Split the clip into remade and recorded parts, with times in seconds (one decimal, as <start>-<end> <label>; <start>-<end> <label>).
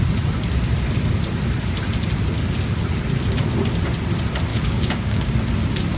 0.0-4.5 recorded; 4.5-5.3 remade; 5.3-6.0 recorded